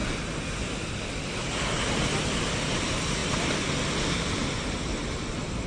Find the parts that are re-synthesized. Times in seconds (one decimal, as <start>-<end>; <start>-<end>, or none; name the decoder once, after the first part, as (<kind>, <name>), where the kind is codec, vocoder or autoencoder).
none